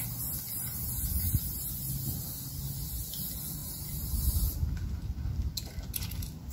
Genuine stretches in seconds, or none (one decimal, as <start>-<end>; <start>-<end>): 0.0-6.5